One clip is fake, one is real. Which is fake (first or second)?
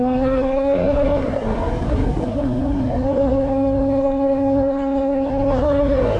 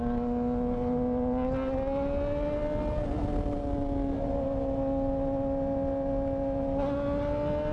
first